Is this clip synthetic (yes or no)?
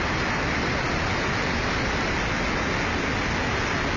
no